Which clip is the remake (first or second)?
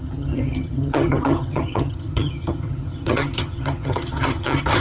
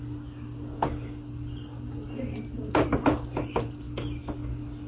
first